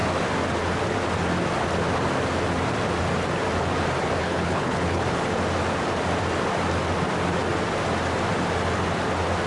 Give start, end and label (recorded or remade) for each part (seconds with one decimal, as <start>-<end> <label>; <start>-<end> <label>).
0.0-4.2 recorded; 4.2-5.0 remade; 5.0-9.5 recorded